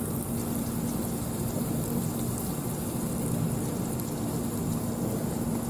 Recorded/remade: recorded